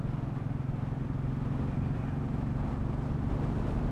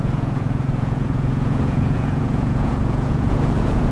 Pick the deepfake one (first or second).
second